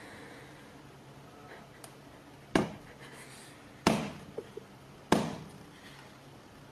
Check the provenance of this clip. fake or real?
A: real